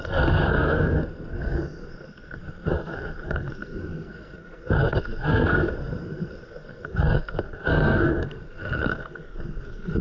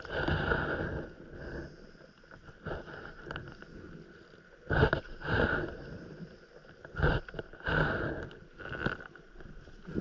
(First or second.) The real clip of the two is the second